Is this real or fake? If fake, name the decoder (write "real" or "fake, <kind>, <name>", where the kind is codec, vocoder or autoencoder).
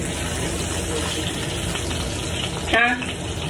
real